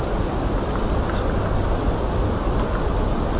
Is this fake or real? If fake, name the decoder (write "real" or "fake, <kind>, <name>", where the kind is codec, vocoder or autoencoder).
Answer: fake, vocoder, BigVGAN v2